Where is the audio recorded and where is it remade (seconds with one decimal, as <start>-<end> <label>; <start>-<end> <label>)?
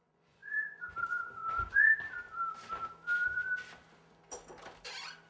0.0-1.9 remade; 1.9-5.3 recorded